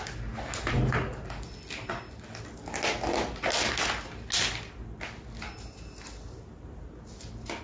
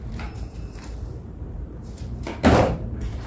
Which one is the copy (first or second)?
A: second